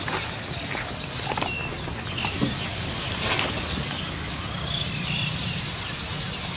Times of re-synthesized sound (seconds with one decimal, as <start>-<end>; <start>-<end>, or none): 2.7-4.4